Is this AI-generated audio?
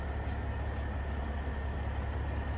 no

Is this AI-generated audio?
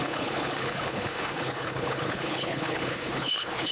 yes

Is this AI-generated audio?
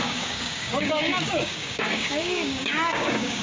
yes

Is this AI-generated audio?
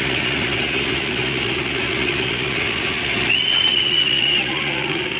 yes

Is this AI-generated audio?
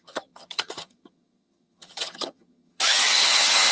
yes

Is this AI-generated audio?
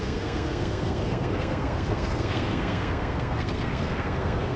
yes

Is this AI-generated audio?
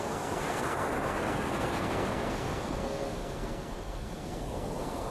yes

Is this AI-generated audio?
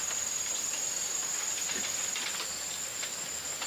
no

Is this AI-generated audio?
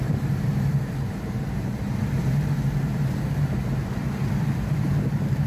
yes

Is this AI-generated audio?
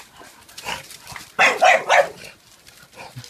no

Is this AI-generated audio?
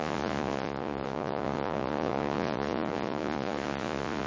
yes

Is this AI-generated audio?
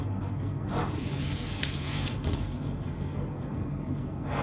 yes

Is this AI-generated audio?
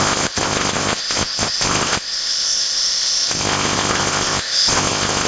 yes